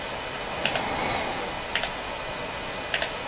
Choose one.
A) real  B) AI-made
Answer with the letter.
A